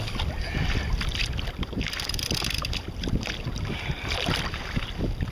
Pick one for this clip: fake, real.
real